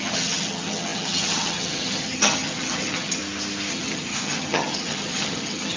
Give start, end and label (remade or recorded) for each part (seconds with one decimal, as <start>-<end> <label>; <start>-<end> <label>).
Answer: 0.0-3.2 remade; 3.2-3.7 recorded; 3.7-5.8 remade